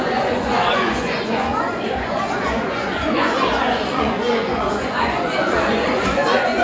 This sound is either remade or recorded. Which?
remade